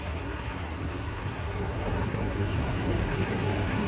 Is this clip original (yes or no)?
no